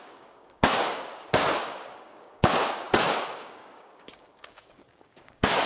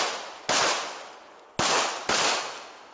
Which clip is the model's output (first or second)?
first